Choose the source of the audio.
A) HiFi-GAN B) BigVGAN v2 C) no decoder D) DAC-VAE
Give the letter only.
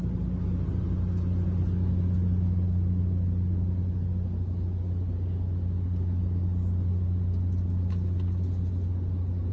C